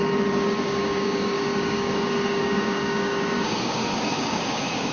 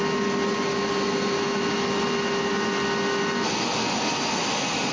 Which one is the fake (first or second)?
first